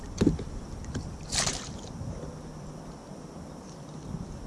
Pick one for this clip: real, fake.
fake